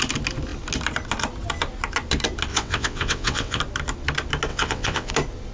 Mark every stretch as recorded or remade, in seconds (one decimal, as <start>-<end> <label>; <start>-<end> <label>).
0.0-2.5 recorded; 2.5-3.6 remade; 3.6-4.5 recorded; 4.5-5.1 remade; 5.1-5.5 recorded